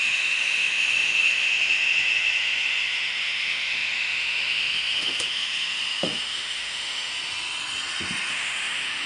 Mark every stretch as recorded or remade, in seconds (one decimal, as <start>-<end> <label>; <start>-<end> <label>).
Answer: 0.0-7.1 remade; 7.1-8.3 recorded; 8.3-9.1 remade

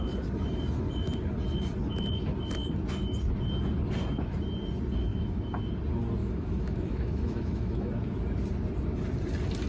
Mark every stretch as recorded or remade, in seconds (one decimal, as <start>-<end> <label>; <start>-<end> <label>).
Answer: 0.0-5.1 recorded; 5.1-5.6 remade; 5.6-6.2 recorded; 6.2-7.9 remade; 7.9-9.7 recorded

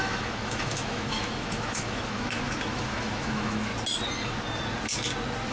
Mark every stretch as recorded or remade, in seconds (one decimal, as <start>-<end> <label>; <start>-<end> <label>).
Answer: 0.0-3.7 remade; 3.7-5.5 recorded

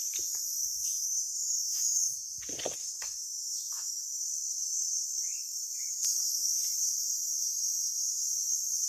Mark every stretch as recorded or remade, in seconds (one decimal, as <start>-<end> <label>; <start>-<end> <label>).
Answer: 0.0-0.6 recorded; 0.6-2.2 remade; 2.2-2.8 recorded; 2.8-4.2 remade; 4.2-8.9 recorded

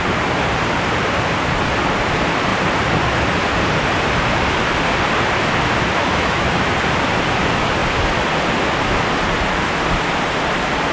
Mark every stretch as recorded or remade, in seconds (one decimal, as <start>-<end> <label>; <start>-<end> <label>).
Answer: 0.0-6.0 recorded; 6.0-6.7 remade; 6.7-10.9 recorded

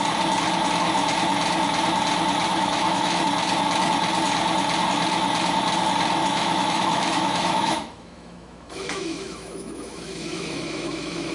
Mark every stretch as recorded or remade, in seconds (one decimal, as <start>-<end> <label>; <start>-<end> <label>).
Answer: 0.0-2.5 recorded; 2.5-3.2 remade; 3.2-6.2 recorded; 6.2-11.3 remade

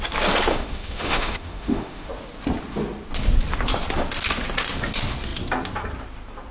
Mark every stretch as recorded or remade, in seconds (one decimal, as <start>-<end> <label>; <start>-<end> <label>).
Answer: 0.0-0.5 recorded; 0.5-2.1 remade; 2.1-6.5 recorded

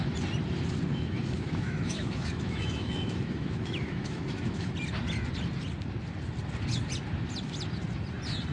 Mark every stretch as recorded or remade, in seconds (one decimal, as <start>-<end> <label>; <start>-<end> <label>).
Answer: 0.0-0.9 recorded; 0.9-4.7 remade; 4.7-8.5 recorded